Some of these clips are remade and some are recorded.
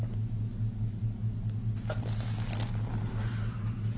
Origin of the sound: recorded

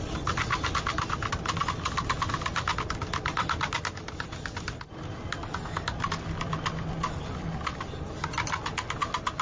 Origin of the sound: recorded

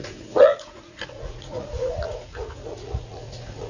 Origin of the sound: remade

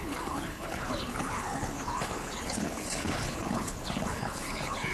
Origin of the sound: remade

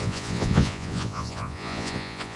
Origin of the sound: remade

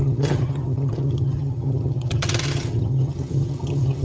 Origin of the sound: remade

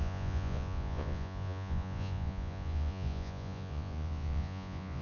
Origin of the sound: remade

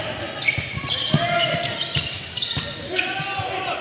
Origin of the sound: recorded